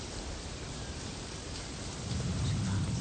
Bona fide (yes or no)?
yes